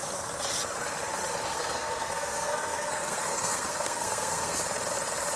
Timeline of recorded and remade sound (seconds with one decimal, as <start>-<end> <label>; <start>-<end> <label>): 0.0-1.5 recorded; 1.5-4.6 remade; 4.6-5.4 recorded